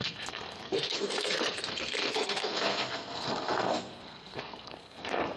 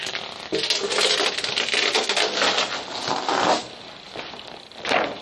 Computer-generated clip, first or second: first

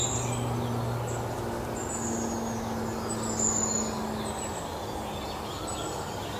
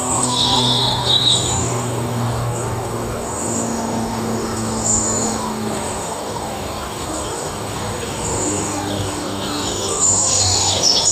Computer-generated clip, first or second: second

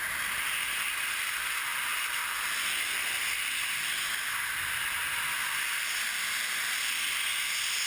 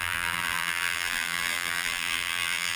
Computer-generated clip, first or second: second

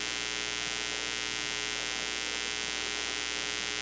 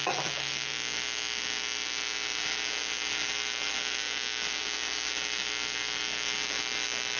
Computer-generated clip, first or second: second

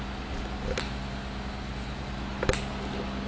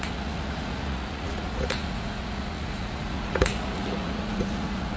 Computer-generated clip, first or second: second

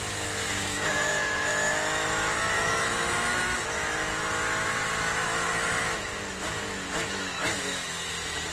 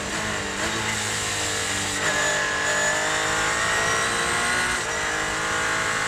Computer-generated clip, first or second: first